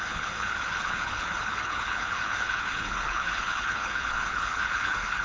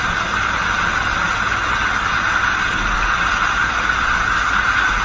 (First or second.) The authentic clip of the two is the second